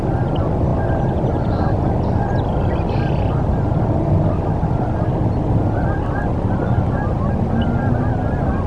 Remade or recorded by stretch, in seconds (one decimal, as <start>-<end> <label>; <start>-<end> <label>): 0.0-8.7 recorded